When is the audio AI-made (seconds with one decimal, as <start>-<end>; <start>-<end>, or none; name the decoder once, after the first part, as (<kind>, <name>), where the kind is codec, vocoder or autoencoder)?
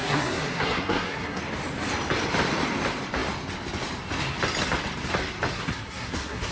0.0-1.4 (codec, SNAC); 5.5-6.5